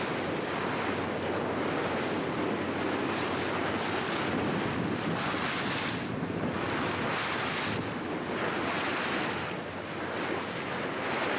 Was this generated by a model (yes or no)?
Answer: no